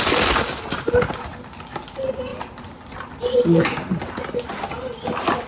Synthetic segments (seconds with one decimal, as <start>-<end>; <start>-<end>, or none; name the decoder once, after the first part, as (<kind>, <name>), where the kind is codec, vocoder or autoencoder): none